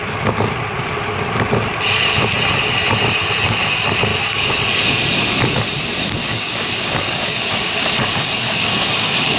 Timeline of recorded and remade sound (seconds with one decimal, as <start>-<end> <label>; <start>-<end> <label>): 0.0-4.1 recorded; 4.1-4.6 remade; 4.6-6.2 recorded; 6.2-9.4 remade